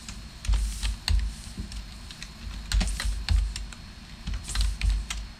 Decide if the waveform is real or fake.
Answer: real